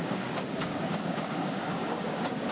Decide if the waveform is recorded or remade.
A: remade